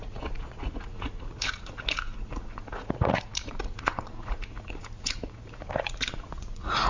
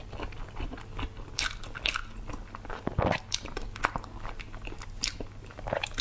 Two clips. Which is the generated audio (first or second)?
first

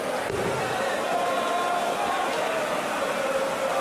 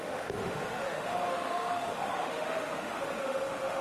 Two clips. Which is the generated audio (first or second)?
second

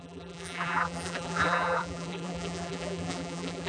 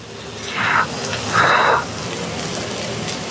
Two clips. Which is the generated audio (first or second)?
first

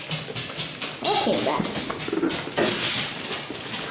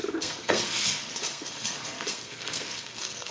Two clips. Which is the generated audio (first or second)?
second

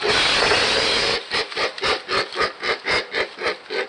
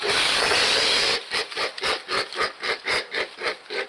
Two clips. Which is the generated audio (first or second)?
second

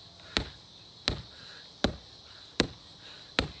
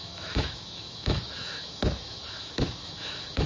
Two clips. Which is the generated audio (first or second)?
second